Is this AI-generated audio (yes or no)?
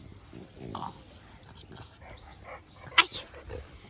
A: no